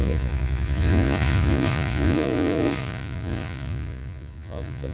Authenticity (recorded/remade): remade